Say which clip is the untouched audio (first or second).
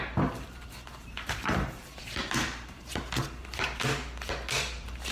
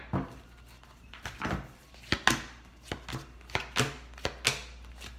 second